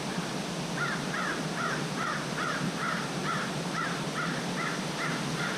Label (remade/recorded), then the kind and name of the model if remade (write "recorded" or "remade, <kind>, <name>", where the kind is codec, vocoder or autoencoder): recorded